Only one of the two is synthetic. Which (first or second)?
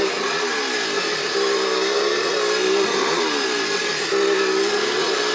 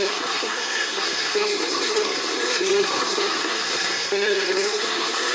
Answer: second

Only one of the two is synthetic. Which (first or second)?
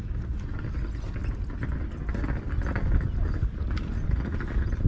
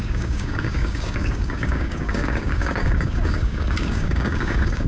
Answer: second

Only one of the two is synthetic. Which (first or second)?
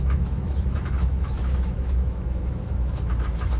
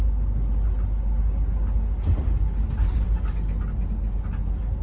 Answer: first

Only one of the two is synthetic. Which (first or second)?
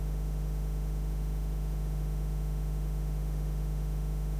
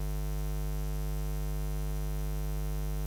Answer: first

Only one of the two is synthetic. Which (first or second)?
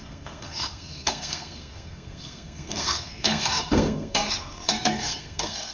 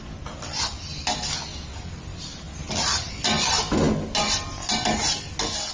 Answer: first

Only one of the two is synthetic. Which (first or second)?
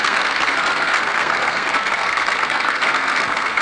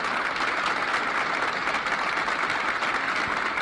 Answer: first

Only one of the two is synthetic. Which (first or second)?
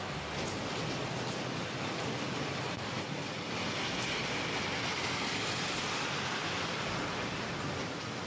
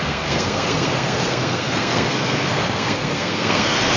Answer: second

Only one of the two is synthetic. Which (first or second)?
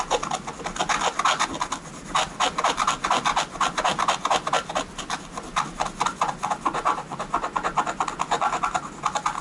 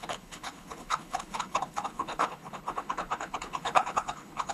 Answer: second